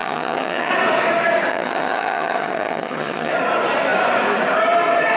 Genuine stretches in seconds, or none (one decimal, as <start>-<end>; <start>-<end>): 0.7-1.5; 3.3-5.2